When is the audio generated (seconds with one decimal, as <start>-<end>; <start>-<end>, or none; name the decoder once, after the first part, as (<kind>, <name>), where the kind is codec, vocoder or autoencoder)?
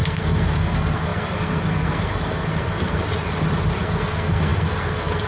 0.0-3.0 (codec, SNAC); 3.8-5.3